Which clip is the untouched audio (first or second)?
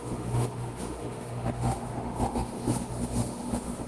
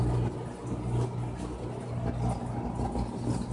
second